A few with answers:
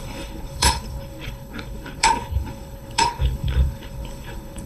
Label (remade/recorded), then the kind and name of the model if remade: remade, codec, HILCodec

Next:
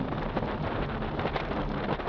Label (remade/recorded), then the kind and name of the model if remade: recorded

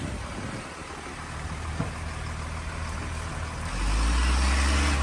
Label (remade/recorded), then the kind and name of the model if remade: recorded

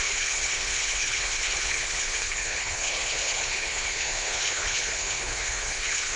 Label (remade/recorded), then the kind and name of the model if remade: remade, codec, HILCodec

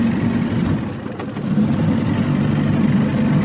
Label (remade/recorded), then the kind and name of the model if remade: recorded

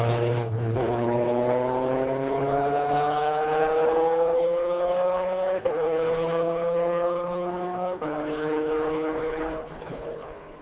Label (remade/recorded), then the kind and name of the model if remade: remade, codec, HILCodec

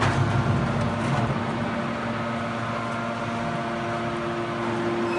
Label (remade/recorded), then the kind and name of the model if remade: recorded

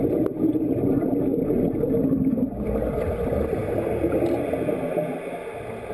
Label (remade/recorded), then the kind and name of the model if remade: recorded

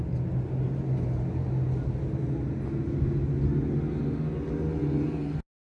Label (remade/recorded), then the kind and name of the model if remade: recorded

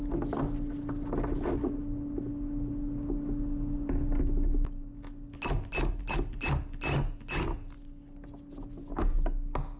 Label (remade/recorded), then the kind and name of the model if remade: recorded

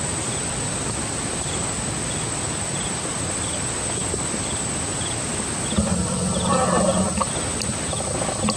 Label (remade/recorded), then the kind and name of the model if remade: recorded